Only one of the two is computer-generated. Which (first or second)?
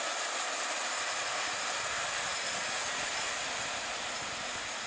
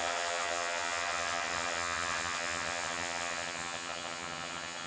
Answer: second